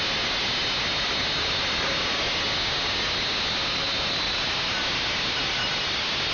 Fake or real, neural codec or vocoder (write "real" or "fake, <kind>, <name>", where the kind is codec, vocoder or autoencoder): real